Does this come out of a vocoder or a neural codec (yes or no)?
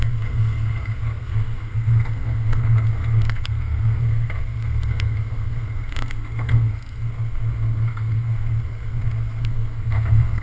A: yes